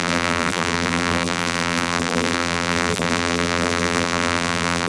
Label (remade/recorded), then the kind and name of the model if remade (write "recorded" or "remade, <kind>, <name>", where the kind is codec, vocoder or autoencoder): remade, vocoder, BigVGAN v2